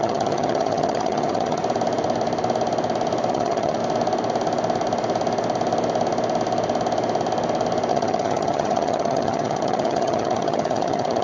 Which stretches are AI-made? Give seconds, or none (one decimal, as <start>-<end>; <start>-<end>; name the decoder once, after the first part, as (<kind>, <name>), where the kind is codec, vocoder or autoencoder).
0.0-1.6 (vocoder, HiFi-GAN); 3.3-3.8; 7.9-11.2